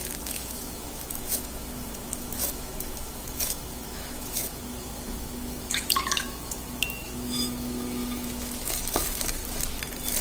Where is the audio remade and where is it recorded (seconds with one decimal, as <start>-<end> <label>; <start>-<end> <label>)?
0.0-9.4 remade; 9.4-10.2 recorded